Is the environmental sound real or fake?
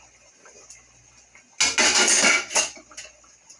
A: real